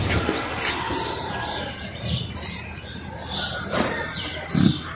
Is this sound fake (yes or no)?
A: yes